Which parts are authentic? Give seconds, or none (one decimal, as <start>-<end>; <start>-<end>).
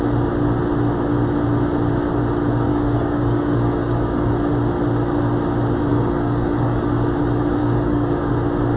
0.0-2.7; 4.3-5.9; 6.8-7.6; 8.3-8.8